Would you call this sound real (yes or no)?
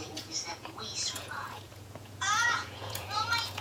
no